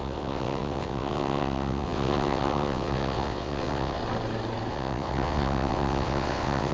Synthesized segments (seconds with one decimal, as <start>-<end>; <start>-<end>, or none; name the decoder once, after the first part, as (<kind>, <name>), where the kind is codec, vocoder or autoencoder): 0.0-4.0 (vocoder, WaveNeXt); 4.7-6.7